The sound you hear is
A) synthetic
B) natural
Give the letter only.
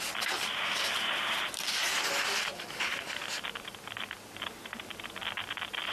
B